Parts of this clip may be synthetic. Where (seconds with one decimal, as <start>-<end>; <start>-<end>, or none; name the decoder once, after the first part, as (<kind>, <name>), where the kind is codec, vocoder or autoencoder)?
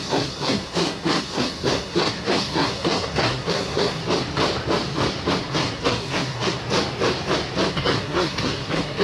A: 0.0-4.0 (codec, SNAC); 5.4-6.6; 7.7-9.0